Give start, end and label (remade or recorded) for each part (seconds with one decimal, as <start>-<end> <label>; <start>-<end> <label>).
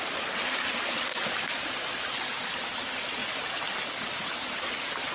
0.0-3.2 remade; 3.2-3.9 recorded; 3.9-5.1 remade